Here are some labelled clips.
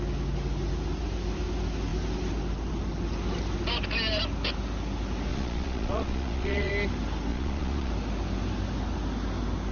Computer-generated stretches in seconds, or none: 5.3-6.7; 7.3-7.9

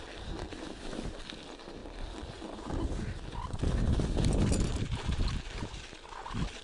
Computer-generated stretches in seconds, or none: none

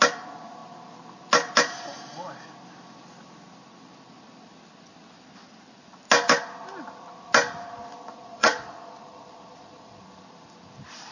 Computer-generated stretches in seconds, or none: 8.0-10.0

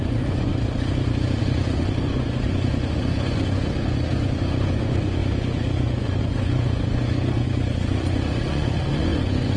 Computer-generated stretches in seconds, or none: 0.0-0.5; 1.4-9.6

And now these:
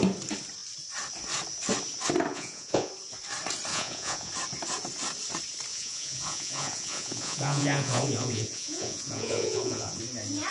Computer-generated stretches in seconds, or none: 2.3-2.9; 3.7-4.3; 5.7-10.0

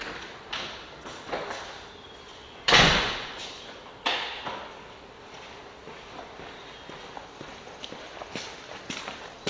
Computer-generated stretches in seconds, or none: 2.3-3.8

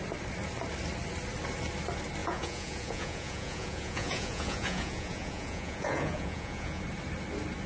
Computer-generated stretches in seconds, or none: 2.2-6.8